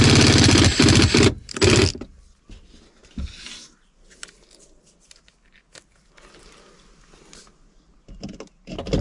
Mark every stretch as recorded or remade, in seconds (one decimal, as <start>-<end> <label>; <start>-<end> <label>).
0.0-9.0 recorded